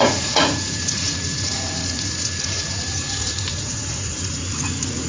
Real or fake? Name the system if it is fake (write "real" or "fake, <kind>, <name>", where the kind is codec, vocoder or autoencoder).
fake, vocoder, Vocos